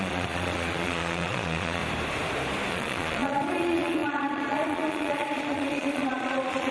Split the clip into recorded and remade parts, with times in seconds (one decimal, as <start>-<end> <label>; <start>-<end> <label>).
0.0-1.8 remade; 1.8-2.7 recorded; 2.7-6.7 remade